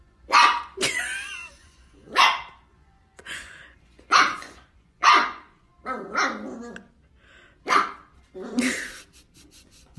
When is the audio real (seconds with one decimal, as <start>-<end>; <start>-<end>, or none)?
2.1-2.7; 5.7-9.5